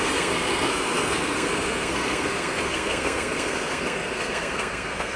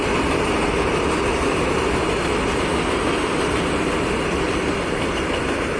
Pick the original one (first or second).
second